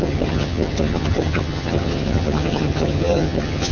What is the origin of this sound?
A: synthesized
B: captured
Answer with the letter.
A